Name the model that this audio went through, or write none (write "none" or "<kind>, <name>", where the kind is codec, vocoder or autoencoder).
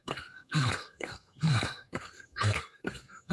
codec, SNAC